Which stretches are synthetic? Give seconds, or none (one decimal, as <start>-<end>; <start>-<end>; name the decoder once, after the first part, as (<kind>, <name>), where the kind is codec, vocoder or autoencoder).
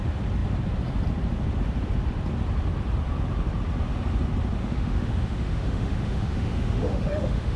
4.6-7.6 (autoencoder, DAC-VAE)